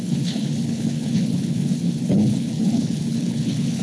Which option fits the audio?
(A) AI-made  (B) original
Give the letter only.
A